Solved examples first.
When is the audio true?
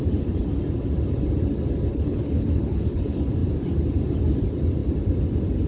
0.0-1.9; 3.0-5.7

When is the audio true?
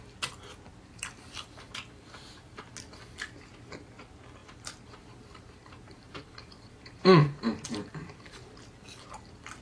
0.0-0.7; 2.6-4.4; 8.5-9.6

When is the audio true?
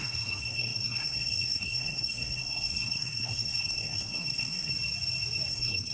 4.7-5.5